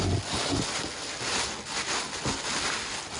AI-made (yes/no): no